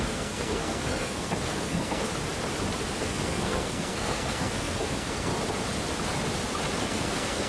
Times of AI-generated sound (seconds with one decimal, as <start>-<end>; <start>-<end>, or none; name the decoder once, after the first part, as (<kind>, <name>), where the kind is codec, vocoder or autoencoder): 0.0-2.1 (codec, SNAC); 3.0-5.3; 6.8-7.5